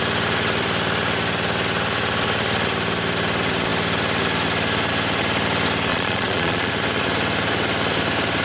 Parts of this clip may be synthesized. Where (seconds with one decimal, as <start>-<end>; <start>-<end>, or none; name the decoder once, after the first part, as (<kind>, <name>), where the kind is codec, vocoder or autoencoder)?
5.9-6.7 (vocoder, Vocos)